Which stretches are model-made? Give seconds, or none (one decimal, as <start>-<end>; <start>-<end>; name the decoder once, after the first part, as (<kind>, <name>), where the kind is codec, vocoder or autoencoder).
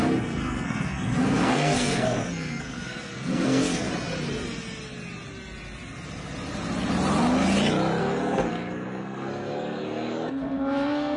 0.0-3.9 (codec, SNAC); 8.0-11.2